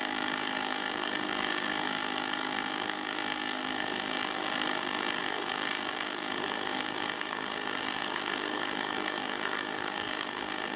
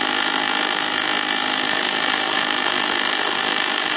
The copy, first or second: first